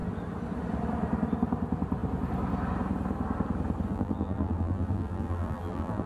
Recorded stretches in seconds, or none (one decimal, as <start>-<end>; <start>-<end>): 0.0-3.9